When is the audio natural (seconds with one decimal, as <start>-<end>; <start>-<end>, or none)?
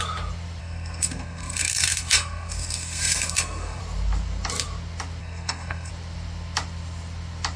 0.0-0.6; 3.8-5.2; 5.9-7.6